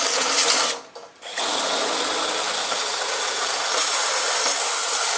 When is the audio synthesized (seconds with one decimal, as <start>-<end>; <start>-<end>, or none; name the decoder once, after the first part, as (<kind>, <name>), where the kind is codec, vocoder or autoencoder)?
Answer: 1.3-1.9 (vocoder, Vocos); 2.6-4.3